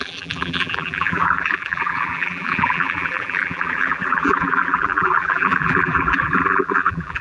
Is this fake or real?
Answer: fake